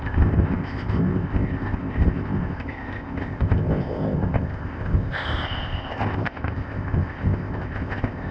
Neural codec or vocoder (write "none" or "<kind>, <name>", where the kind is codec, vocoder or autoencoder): codec, ZipCodec